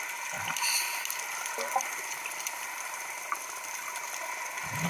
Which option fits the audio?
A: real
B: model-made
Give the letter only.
A